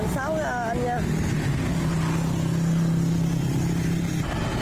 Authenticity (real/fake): real